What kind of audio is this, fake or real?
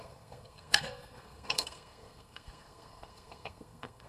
fake